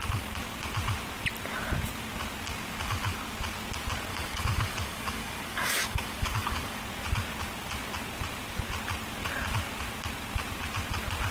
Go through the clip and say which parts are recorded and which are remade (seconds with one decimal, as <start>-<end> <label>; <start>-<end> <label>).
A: 0.0-4.1 recorded; 4.1-6.8 remade; 6.8-11.3 recorded